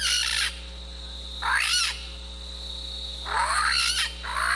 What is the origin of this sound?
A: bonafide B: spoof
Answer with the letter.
A